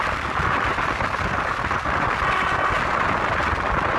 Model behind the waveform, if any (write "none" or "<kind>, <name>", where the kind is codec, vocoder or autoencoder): none